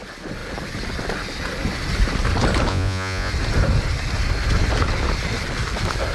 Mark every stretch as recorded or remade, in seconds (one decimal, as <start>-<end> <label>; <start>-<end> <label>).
0.0-2.7 recorded; 2.7-3.3 remade; 3.3-6.1 recorded